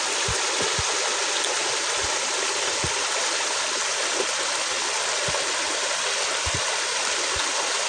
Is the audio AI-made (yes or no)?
no